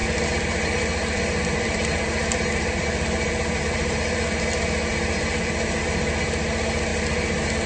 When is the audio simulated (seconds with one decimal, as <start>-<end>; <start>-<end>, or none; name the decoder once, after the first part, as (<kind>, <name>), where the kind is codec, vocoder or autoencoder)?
0.0-4.4 (vocoder, BigVGAN v2)